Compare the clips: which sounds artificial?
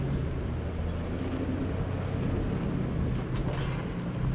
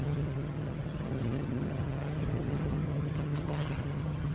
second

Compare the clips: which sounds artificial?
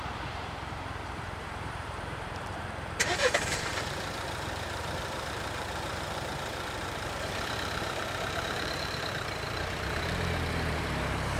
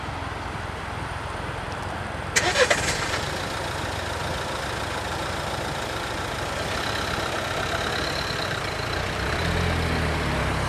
first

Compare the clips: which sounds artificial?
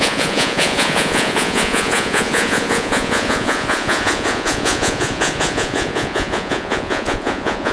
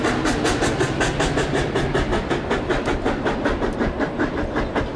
first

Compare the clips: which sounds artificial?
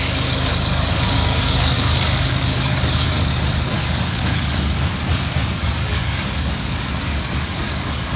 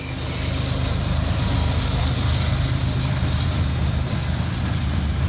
first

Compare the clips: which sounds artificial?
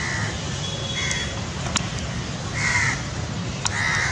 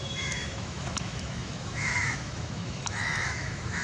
second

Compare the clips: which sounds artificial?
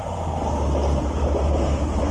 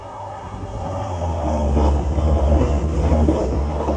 second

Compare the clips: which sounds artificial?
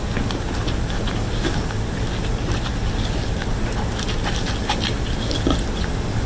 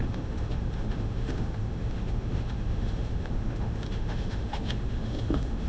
second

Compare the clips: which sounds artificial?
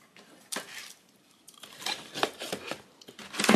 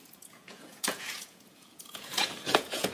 second